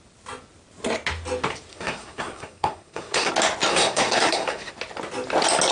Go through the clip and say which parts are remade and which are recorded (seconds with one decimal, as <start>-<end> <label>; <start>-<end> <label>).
0.0-1.7 recorded; 1.7-3.3 remade; 3.3-3.7 recorded; 3.7-4.7 remade; 4.7-5.7 recorded